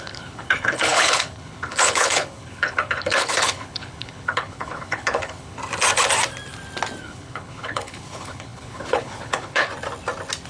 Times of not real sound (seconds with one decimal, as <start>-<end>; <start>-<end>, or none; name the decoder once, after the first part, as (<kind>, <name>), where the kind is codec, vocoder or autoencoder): 0.0-5.6 (codec, HILCodec); 7.0-9.7